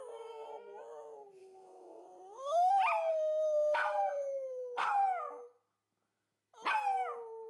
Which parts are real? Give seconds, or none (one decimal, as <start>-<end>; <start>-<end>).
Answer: 0.0-1.4; 2.7-3.1; 5.0-7.5